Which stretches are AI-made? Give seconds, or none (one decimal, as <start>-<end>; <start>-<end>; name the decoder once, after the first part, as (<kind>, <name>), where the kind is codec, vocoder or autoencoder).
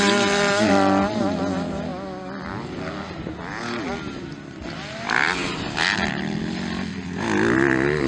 none